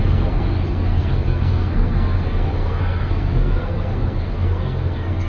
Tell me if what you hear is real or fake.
fake